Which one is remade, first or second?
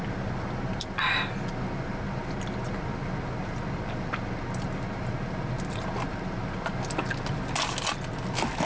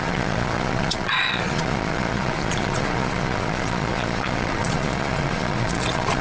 second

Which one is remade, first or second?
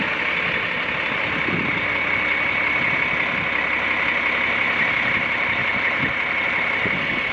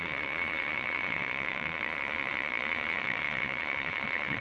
second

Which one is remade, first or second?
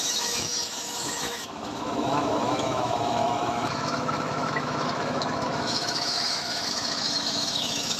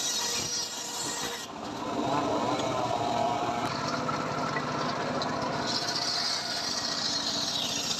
first